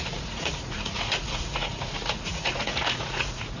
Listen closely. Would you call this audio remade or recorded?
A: remade